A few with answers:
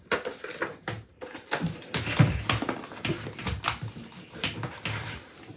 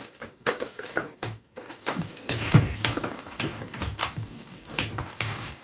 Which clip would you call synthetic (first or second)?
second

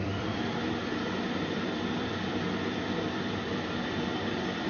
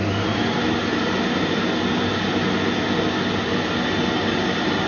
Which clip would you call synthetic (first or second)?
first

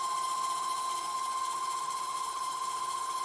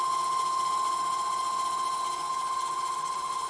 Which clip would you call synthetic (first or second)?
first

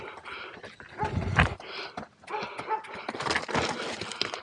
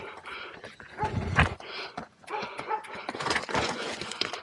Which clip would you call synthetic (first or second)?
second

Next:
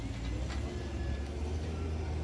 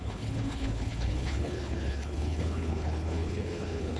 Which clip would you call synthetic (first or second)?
second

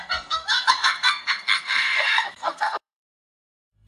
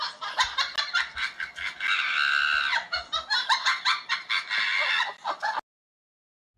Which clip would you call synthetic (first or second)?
first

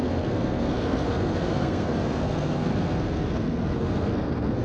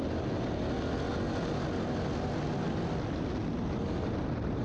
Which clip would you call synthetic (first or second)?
first